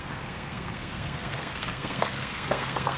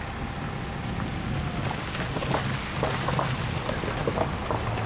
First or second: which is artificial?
first